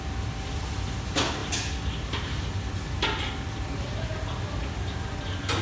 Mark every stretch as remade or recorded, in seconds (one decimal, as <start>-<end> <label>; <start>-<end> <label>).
0.0-5.6 recorded